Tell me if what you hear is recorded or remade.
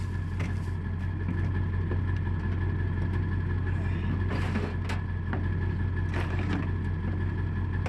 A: recorded